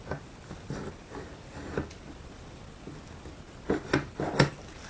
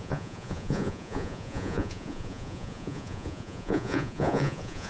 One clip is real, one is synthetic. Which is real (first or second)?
first